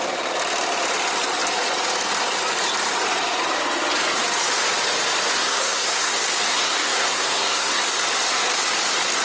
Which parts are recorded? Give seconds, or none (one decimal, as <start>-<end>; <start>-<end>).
0.0-5.4; 6.1-6.5; 7.8-9.2